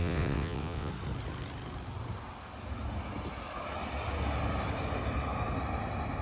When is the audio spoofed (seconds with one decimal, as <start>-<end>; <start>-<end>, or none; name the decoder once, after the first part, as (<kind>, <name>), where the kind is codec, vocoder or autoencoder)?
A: 0.0-0.9 (vocoder, WaveNeXt)